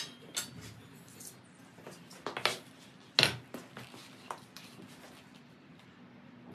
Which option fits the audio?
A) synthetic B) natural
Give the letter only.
B